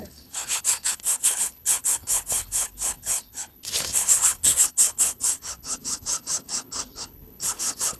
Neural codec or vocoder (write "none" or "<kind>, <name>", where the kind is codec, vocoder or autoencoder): codec, HILCodec